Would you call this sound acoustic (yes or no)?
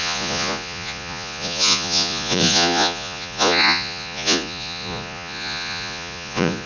no